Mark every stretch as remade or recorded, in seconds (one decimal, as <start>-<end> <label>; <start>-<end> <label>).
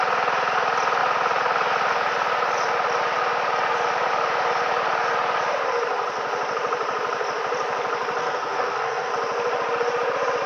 0.0-8.2 recorded; 8.2-9.1 remade; 9.1-10.5 recorded